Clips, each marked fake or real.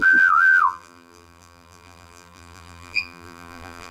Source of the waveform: fake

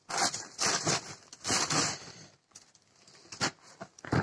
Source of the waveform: fake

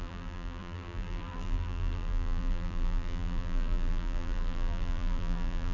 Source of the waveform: fake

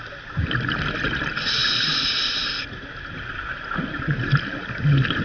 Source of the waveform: real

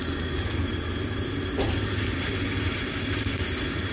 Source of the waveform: real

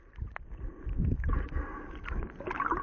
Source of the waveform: real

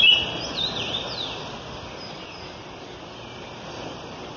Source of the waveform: real